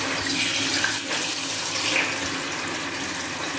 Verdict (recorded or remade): recorded